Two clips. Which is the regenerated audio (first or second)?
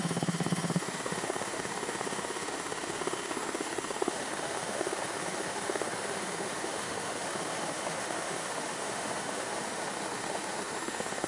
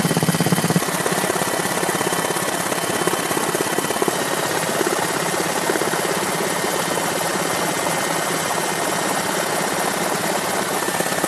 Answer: first